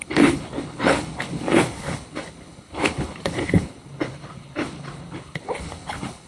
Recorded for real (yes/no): no